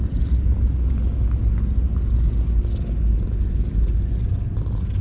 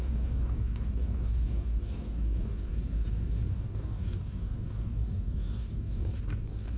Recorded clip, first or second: first